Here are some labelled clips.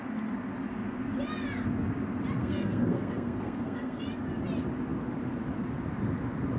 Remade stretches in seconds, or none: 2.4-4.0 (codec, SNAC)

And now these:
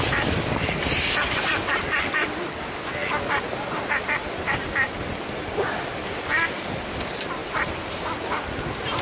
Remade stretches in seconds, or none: none

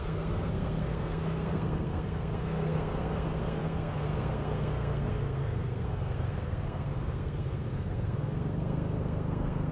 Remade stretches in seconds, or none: 0.0-9.7 (codec, SNAC)

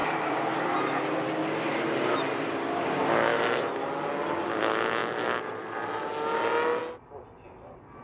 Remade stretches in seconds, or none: 0.0-0.6 (vocoder, BigVGAN v2); 3.3-3.9

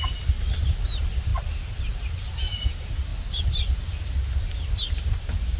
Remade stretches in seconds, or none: 1.3-2.6 (vocoder, BigVGAN v2); 3.1-4.1

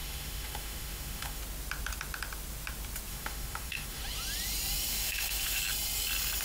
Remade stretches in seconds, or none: 0.0-1.4 (autoencoder, DAC-VAE); 3.1-4.0; 4.9-5.6

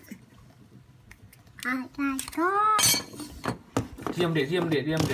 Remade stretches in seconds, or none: none